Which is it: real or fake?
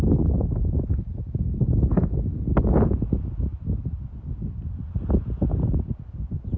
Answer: real